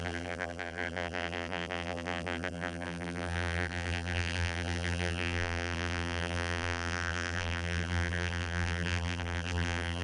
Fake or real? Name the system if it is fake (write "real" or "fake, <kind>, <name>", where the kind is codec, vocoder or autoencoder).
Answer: fake, vocoder, BigVGAN v2